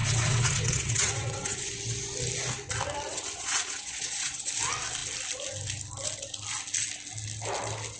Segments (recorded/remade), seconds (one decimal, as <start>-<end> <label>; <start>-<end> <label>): 0.0-1.7 remade; 1.7-3.1 recorded; 3.1-4.5 remade; 4.5-8.0 recorded